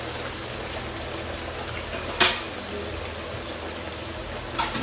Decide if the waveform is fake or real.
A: real